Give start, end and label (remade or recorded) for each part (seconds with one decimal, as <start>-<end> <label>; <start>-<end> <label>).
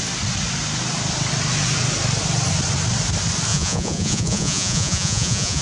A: 0.0-3.5 recorded; 3.5-5.6 remade